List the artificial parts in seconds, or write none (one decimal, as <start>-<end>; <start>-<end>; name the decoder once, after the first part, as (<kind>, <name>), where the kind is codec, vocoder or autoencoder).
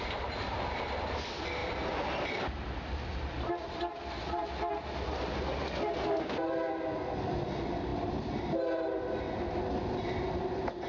none